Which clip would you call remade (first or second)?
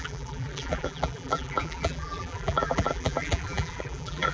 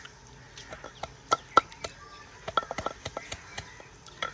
first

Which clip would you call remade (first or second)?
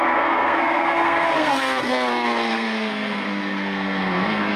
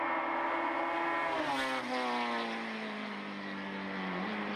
first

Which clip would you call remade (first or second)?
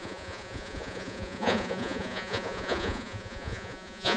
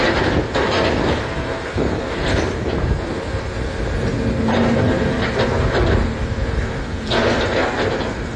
first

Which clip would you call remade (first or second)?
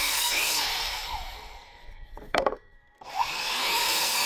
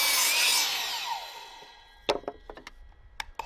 first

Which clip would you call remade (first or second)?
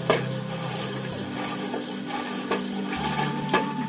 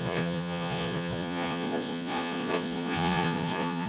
second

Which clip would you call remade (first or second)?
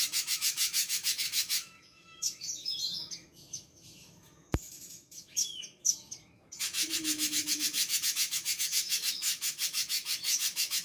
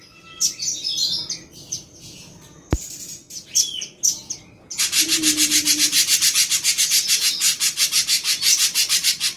first